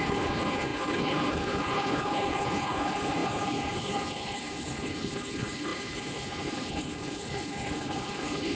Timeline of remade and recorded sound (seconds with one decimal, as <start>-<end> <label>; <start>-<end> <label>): 0.0-8.6 remade